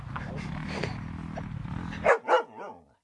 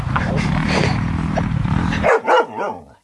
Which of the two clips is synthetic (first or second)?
second